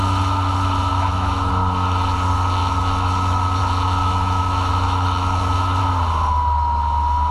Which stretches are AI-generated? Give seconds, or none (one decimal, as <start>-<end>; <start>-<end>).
0.9-1.5; 2.6-3.6; 4.0-5.8